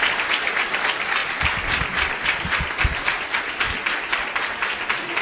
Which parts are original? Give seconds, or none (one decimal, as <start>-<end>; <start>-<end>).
0.0-5.2